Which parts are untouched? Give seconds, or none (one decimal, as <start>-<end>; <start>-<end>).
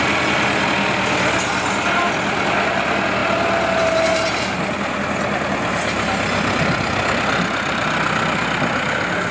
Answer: 0.0-9.3